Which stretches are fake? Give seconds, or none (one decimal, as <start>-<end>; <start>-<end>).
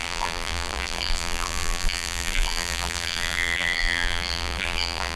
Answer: 0.0-5.2